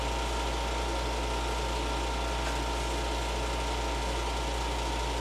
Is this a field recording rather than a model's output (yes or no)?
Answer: yes